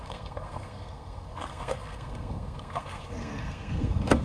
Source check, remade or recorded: remade